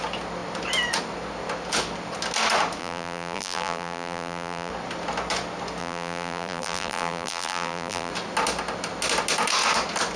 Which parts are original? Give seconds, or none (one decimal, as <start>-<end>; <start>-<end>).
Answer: 0.0-2.8; 4.7-5.8; 8.1-10.2